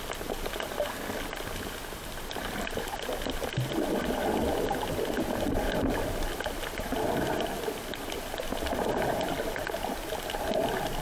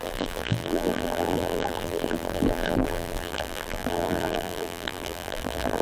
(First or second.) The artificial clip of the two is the second